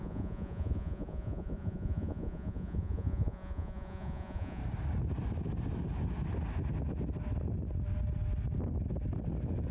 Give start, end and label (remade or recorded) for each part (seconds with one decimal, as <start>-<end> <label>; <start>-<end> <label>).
0.0-4.6 remade; 4.6-9.7 recorded